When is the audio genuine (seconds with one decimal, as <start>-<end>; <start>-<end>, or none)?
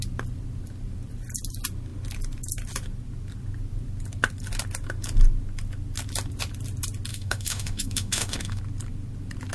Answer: 0.0-7.1; 8.6-9.5